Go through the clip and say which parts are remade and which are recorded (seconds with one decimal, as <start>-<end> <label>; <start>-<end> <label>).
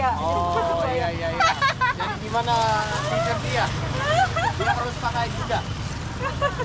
0.0-6.6 recorded